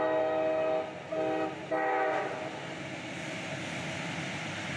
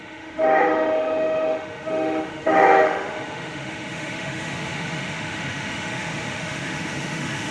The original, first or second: first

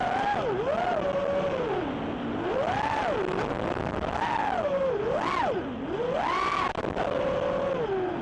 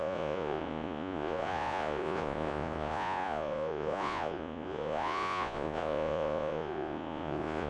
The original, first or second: first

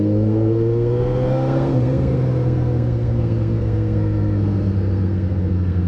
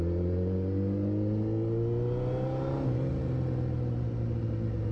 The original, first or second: second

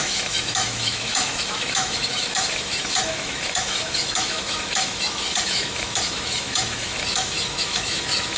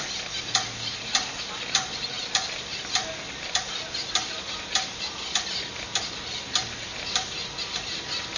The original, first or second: second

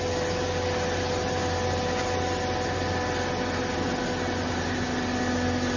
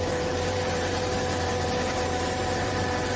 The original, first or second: first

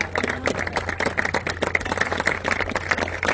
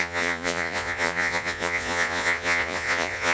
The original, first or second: first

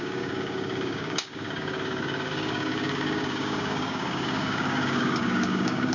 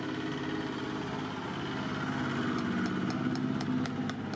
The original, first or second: second